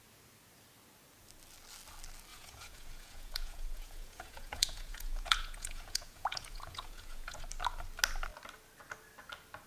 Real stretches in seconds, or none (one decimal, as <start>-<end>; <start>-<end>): 0.0-2.3; 7.4-9.7